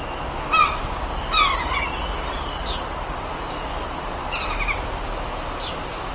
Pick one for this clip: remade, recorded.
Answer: recorded